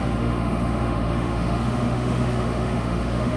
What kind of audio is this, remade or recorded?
remade